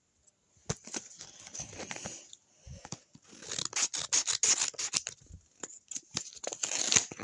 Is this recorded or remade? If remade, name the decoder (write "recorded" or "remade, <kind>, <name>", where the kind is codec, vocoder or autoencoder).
recorded